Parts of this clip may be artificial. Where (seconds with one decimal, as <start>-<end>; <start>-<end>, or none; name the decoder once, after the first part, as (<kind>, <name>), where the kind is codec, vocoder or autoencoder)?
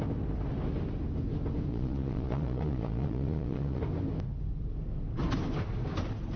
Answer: 1.7-3.8 (vocoder, Vocos)